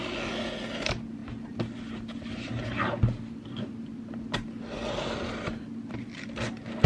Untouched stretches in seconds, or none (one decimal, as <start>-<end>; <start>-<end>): 0.0-6.9